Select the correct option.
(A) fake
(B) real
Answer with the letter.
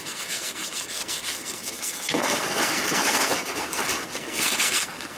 A